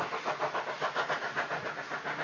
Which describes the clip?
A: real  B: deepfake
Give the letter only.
A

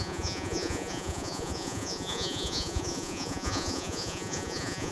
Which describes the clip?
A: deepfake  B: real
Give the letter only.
A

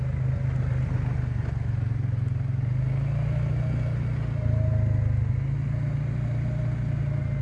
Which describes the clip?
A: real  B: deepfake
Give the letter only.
A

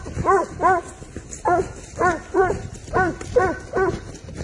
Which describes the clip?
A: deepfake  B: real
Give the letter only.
B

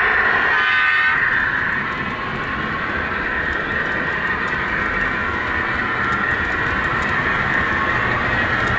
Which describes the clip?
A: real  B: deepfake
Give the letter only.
A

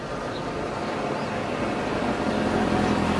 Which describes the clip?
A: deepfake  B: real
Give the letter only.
B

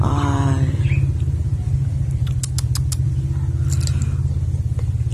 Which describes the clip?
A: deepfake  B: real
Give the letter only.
B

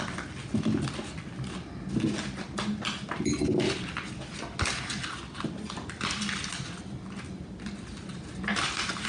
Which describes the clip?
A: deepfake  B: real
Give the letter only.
B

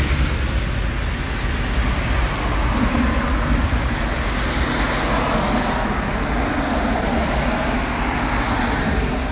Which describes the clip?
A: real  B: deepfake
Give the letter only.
A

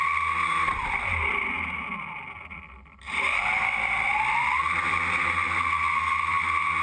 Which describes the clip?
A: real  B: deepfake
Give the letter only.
A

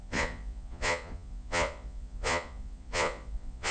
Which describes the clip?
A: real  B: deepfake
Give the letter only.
B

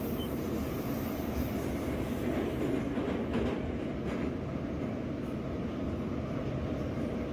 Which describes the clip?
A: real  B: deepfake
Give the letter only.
A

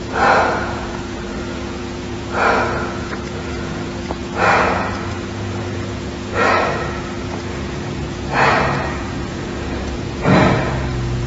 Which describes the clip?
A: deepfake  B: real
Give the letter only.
A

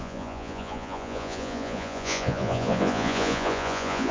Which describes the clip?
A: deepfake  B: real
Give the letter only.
A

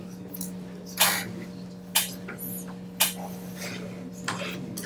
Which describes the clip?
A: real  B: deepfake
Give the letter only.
A